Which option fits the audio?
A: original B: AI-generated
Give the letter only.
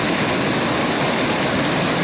A